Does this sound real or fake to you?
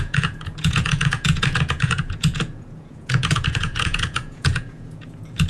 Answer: fake